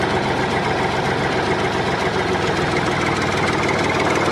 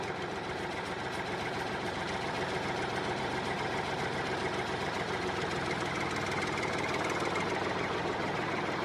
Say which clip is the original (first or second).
first